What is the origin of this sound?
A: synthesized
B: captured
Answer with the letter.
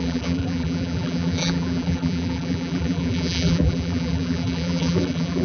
A